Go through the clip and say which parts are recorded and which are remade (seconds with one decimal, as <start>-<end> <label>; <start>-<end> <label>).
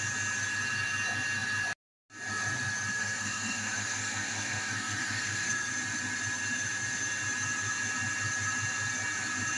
0.0-2.9 recorded; 2.9-5.7 remade; 5.7-9.6 recorded